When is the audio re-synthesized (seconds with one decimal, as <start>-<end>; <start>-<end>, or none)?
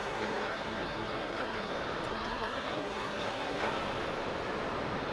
0.0-1.7; 2.1-3.7